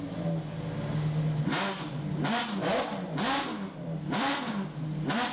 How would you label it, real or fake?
real